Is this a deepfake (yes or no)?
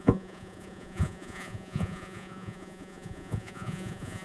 yes